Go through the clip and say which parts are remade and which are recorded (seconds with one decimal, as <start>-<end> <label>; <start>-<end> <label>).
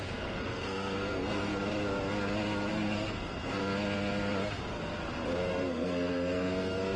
0.0-1.5 remade; 1.5-2.7 recorded; 2.7-3.6 remade; 3.6-5.5 recorded; 5.5-7.0 remade